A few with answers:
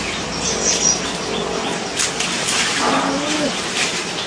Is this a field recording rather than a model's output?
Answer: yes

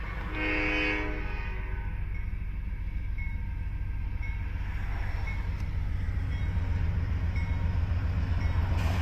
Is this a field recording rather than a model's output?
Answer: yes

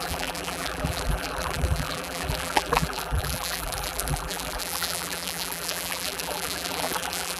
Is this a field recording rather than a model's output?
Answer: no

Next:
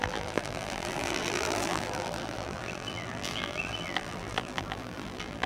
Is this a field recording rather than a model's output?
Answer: no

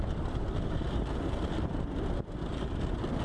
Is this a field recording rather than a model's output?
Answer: yes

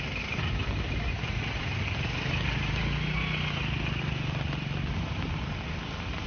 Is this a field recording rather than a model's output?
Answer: yes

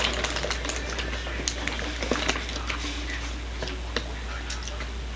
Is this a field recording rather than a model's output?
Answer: yes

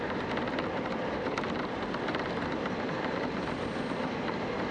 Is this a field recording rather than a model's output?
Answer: no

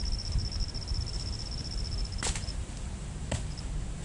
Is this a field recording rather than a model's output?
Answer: no